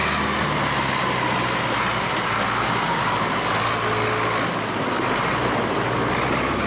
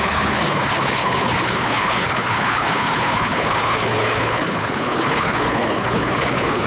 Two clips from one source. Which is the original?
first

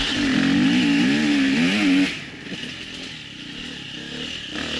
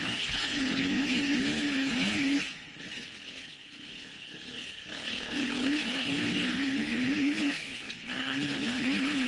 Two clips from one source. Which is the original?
first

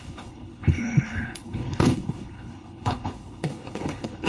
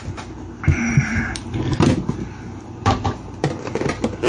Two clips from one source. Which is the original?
second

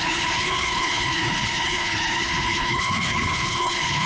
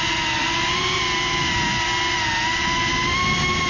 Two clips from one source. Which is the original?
second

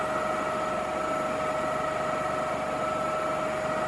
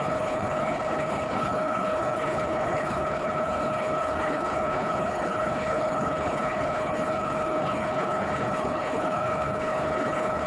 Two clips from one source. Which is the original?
first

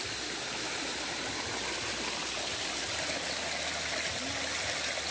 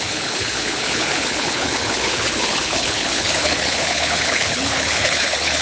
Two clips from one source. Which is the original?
first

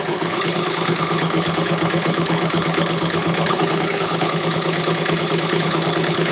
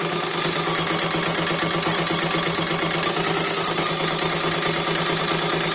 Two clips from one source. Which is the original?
second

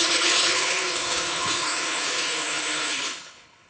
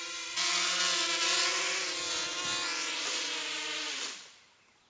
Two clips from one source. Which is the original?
second